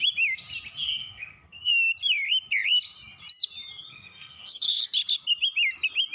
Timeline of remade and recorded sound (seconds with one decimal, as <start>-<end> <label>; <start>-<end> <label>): 0.0-1.0 recorded; 1.0-1.7 remade; 1.7-3.9 recorded; 3.9-4.8 remade; 4.8-6.1 recorded